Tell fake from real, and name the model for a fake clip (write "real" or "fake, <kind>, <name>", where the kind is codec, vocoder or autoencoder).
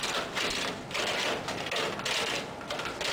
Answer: real